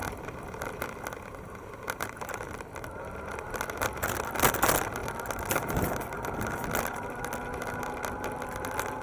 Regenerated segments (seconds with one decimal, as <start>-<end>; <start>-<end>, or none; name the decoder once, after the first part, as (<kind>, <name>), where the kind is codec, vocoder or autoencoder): none